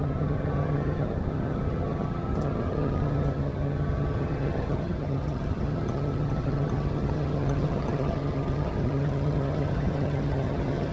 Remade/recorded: remade